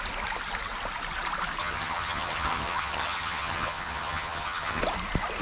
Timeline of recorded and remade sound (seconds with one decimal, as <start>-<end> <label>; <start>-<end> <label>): 0.0-1.6 recorded; 1.6-4.8 remade; 4.8-5.4 recorded